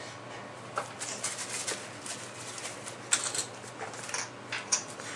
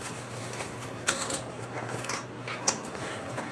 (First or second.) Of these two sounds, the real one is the first